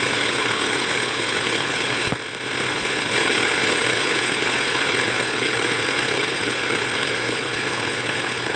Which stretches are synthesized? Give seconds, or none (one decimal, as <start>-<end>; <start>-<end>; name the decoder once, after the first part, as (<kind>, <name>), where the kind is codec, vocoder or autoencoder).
0.0-2.1 (codec, HILCodec); 2.7-8.6